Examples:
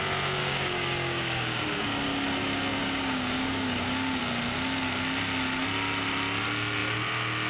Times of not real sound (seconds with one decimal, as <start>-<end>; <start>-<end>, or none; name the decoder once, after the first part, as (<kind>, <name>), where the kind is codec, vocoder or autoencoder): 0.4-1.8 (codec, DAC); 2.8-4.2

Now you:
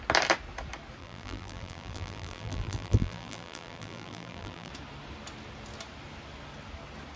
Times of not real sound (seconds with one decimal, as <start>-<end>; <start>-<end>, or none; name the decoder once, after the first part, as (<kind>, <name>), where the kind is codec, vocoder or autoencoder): 1.0-4.7 (vocoder, BigVGAN v2)

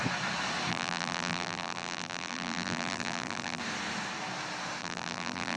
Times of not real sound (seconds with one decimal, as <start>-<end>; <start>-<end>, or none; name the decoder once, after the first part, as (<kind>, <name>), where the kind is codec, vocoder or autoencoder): 0.7-3.6 (vocoder, BigVGAN v2); 4.8-5.6